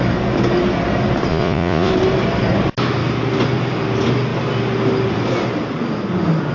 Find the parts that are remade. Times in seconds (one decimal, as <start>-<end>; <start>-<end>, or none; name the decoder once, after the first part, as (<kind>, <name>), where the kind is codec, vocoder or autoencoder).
1.3-1.9 (vocoder, Vocos)